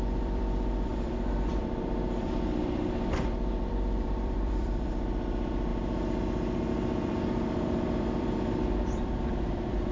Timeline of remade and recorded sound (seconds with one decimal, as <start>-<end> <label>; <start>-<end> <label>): 0.0-5.7 remade; 5.7-6.7 recorded; 6.7-9.9 remade